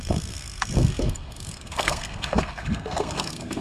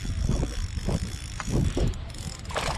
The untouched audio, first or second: second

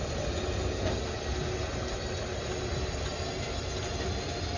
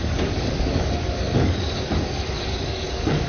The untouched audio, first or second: first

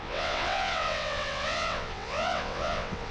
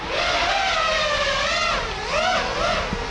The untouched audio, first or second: second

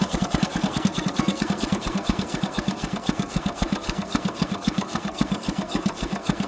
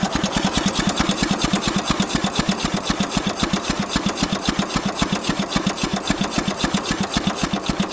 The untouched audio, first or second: second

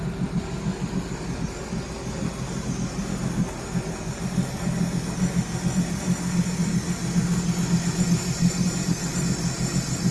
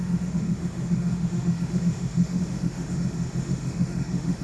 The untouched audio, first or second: first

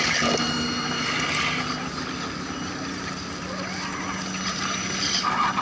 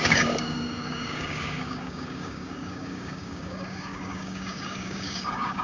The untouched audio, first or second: first